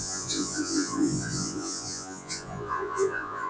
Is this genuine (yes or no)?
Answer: no